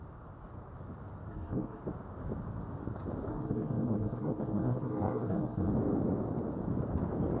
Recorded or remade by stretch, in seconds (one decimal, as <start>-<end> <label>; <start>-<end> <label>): 0.0-1.3 recorded; 1.3-1.8 remade; 1.8-3.3 recorded; 3.3-5.7 remade; 5.7-7.4 recorded